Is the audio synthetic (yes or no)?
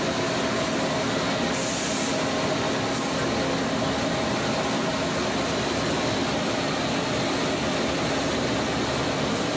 no